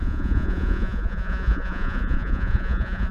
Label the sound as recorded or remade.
remade